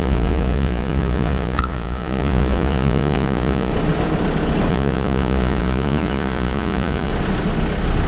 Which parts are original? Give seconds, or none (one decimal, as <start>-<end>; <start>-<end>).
3.7-4.7; 7.1-8.1

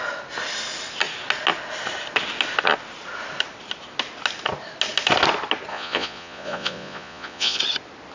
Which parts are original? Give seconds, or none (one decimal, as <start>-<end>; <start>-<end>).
0.0-5.7; 7.6-8.1

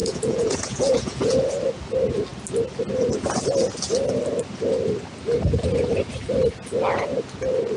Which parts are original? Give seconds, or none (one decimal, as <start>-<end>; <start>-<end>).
1.4-7.8